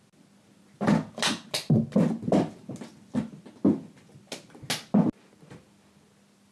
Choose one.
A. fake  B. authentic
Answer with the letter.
B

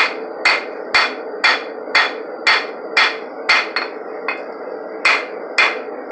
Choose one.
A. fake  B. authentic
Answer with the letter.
B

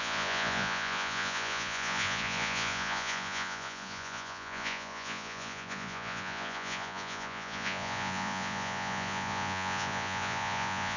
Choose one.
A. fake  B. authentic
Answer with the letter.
A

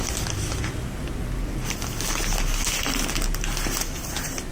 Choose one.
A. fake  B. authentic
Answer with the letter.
B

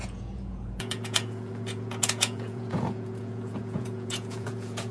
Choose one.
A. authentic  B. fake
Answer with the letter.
B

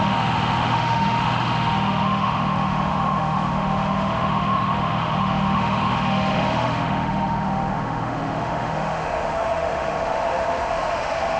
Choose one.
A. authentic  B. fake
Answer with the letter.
B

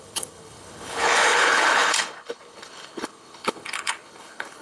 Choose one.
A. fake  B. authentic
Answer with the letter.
A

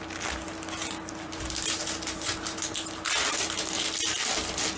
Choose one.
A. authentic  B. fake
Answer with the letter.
A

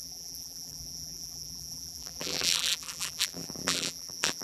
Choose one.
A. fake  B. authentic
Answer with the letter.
A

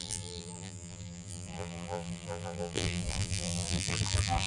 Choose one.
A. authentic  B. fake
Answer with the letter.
B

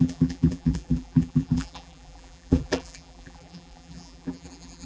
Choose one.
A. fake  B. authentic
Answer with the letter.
A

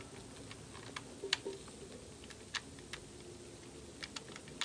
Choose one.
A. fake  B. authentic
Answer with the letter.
B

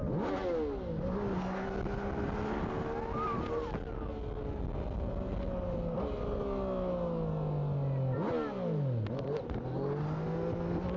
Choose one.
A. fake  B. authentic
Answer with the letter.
B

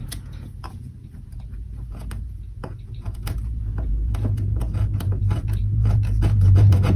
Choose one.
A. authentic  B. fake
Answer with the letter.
B